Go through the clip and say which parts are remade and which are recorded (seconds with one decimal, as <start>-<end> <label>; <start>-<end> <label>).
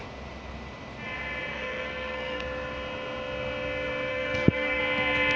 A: 0.0-1.5 recorded; 1.5-2.4 remade; 2.4-4.1 recorded; 4.1-4.8 remade; 4.8-5.4 recorded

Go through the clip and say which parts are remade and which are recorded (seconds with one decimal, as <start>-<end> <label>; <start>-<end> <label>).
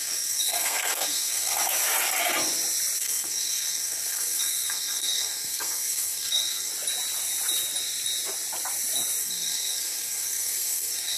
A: 0.0-1.6 remade; 1.6-3.0 recorded; 3.0-6.7 remade; 6.7-9.2 recorded; 9.2-11.2 remade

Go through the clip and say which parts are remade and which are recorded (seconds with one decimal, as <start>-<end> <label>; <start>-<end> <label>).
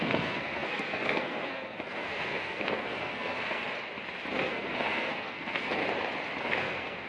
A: 0.0-3.6 remade; 3.6-4.3 recorded; 4.3-5.8 remade; 5.8-6.4 recorded; 6.4-7.1 remade